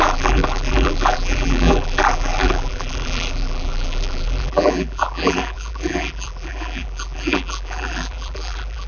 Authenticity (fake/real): fake